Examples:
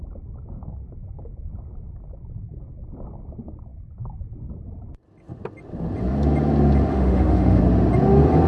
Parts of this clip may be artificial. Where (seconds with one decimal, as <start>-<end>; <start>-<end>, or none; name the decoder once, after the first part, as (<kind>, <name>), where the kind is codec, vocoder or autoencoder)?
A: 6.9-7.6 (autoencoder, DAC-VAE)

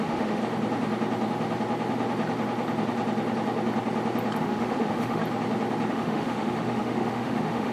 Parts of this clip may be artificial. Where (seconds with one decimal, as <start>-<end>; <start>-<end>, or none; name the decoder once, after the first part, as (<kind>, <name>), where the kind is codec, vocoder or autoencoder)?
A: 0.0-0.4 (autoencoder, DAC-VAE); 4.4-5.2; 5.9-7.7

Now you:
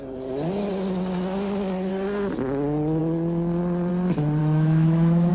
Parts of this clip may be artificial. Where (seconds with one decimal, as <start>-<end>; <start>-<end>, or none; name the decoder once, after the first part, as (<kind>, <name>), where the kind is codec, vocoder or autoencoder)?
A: 4.4-5.3 (autoencoder, DAC-VAE)

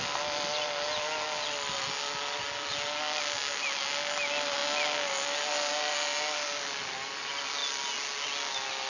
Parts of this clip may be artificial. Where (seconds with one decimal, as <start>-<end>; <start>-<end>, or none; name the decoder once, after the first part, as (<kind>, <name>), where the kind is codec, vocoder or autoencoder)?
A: none

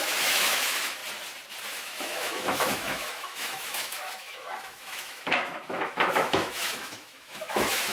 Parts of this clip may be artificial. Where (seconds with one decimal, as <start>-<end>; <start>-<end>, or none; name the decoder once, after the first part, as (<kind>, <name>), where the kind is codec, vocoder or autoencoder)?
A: 0.0-1.0 (autoencoder, DAC-VAE); 1.7-7.9

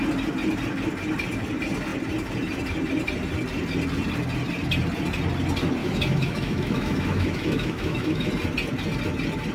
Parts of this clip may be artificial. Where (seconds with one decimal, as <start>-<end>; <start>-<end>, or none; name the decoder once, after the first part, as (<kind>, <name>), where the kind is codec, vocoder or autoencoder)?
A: 5.8-8.3 (autoencoder, DAC-VAE)

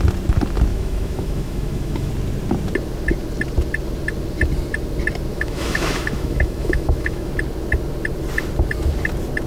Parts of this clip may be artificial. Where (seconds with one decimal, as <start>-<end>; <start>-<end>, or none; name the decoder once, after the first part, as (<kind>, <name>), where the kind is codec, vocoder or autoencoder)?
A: 0.7-2.1 (autoencoder, DAC-VAE); 5.3-7.3

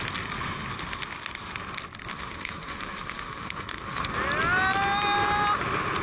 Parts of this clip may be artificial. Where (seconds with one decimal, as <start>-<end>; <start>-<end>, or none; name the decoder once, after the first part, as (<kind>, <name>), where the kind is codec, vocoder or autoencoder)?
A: 2.1-4.0 (autoencoder, DAC-VAE)